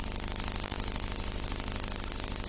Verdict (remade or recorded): recorded